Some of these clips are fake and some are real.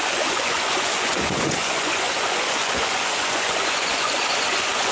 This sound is fake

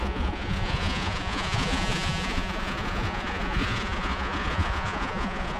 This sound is fake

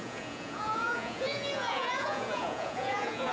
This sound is fake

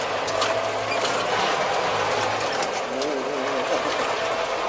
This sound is real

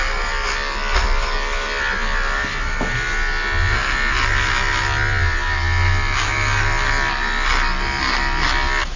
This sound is real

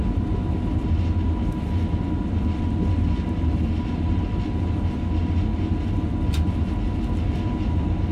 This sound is real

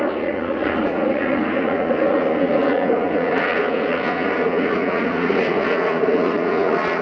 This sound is fake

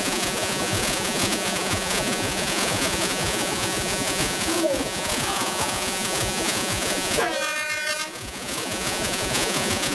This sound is fake